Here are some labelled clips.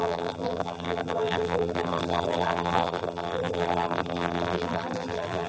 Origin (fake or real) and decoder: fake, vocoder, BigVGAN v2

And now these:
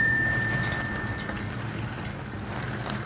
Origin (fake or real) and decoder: real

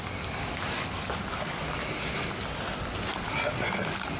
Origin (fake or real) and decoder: real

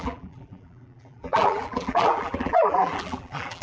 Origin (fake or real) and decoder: fake, vocoder, BigVGAN v2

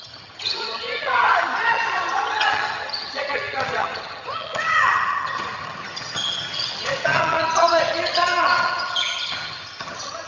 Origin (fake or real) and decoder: fake, vocoder, HiFi-GAN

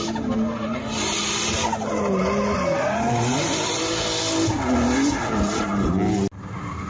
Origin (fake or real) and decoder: real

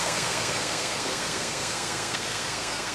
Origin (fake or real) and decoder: fake, codec, SNAC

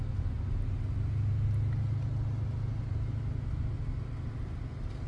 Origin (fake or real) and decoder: real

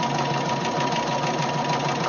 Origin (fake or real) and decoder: real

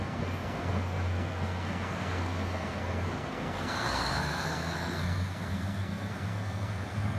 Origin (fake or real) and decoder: fake, codec, SNAC